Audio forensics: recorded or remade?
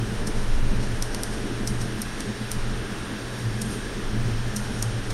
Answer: remade